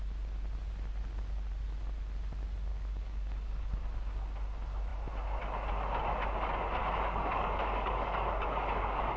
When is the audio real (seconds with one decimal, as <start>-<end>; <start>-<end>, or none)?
0.0-2.7; 3.7-6.8